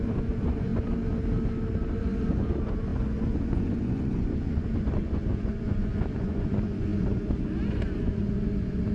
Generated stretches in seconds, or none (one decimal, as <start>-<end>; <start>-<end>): 0.0-0.7; 1.9-8.9